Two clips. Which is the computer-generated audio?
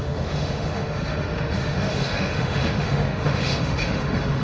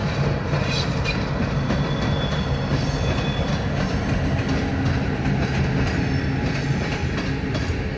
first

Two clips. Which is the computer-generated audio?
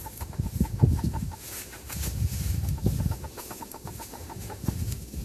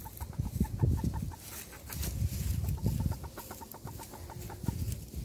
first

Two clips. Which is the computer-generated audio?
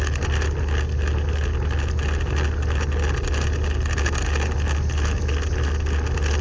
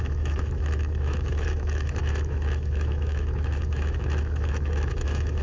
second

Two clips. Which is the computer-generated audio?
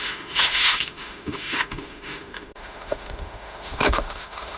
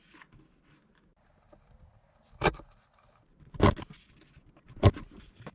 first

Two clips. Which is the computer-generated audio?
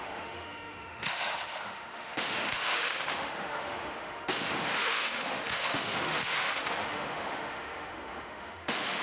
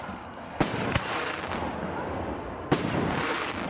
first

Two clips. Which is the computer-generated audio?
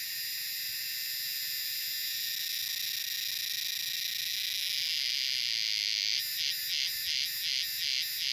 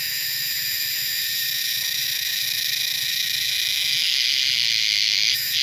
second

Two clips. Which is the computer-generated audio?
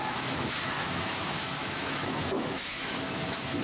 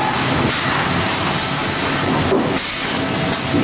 first